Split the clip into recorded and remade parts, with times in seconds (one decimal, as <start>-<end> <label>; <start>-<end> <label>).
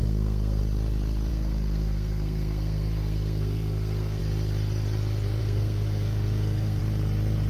0.0-0.6 remade; 0.6-1.3 recorded; 1.3-4.2 remade; 4.2-5.4 recorded; 5.4-6.8 remade; 6.8-7.5 recorded